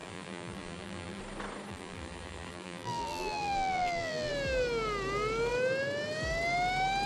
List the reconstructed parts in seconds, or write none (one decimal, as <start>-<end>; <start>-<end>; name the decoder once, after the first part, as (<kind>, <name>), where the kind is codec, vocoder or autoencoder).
0.0-1.2 (vocoder, BigVGAN v2); 1.7-4.3